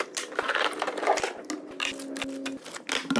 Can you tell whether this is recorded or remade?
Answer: recorded